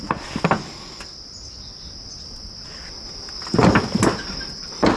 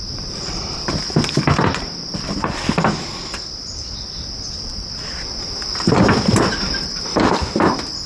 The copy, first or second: second